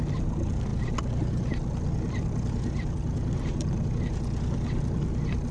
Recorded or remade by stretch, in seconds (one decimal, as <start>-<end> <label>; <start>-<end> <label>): 0.0-5.5 recorded